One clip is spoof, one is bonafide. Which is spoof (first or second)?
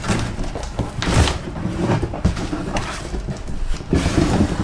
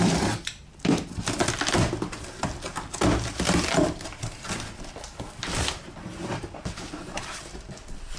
second